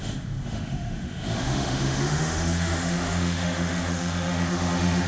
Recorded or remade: remade